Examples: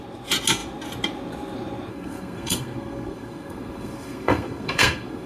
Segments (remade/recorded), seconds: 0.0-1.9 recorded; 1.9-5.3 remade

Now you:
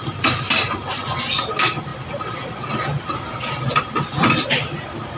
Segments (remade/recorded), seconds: 0.0-5.2 recorded

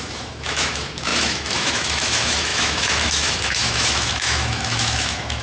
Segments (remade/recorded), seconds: 0.0-5.4 remade

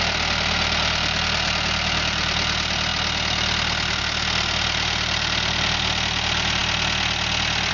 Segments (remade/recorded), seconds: 0.0-2.9 remade; 2.9-4.0 recorded; 4.0-6.6 remade; 6.6-7.7 recorded

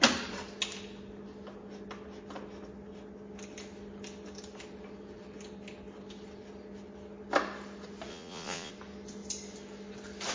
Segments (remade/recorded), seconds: 0.0-8.1 recorded; 8.1-8.7 remade; 8.7-10.3 recorded

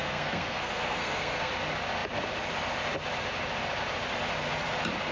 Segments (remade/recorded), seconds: 0.0-1.5 remade; 1.5-5.1 recorded

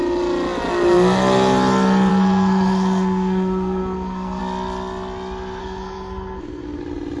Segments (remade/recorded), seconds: 0.0-2.1 recorded; 2.1-4.4 remade; 4.4-5.6 recorded; 5.6-6.8 remade; 6.8-7.2 recorded